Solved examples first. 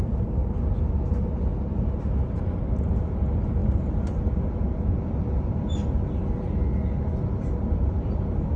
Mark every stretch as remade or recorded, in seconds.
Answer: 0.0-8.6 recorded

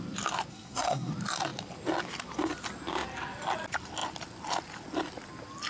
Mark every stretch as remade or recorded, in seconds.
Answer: 0.0-0.5 recorded; 0.5-1.1 remade; 1.1-5.7 recorded